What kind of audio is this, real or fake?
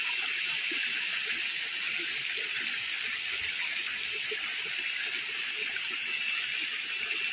real